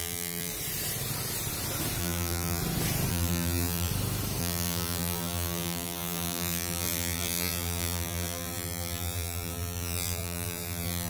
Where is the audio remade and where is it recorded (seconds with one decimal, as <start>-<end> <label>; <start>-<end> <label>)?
0.0-0.5 remade; 0.5-2.0 recorded; 2.0-2.6 remade; 2.6-3.1 recorded; 3.1-3.9 remade; 3.9-4.4 recorded; 4.4-11.1 remade

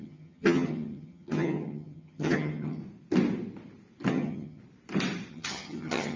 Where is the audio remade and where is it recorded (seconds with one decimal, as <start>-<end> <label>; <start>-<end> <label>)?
0.0-2.8 remade; 2.8-4.1 recorded; 4.1-4.6 remade; 4.6-5.3 recorded; 5.3-6.2 remade

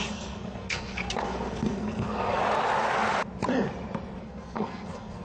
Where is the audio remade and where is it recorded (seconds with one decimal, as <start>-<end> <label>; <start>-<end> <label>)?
0.0-2.4 remade; 2.4-4.2 recorded; 4.2-5.2 remade

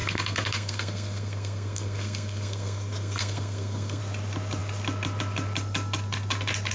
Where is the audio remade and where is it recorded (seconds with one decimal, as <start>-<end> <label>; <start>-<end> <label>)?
0.0-4.0 remade; 4.0-6.7 recorded

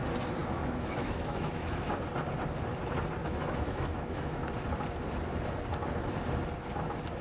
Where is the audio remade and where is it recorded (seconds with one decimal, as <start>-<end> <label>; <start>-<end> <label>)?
0.0-0.4 recorded; 0.4-1.9 remade; 1.9-3.2 recorded; 3.2-4.4 remade; 4.4-7.2 recorded